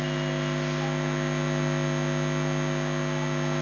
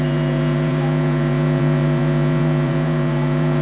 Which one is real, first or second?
first